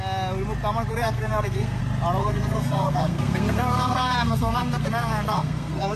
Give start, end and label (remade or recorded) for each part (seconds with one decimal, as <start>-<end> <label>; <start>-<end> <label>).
0.0-0.9 recorded; 0.9-1.8 remade; 1.8-2.2 recorded; 2.2-6.0 remade